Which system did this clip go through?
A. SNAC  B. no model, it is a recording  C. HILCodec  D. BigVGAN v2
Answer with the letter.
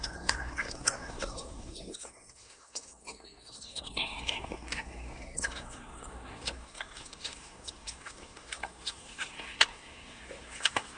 A